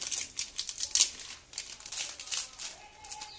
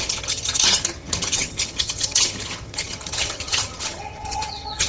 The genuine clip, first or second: first